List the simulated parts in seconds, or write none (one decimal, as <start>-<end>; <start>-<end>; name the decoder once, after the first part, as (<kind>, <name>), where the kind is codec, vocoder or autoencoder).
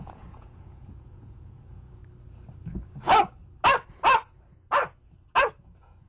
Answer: 0.0-2.0 (vocoder, Vocos); 5.6-6.1